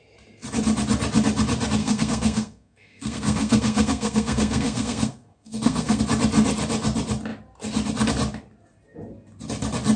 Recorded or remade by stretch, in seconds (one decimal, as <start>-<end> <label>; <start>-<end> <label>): 0.0-1.8 recorded; 1.8-6.0 remade; 6.0-10.0 recorded